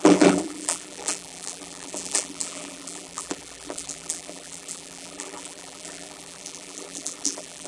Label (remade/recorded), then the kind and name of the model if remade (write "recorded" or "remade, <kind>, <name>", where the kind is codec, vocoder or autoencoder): remade, vocoder, BigVGAN v2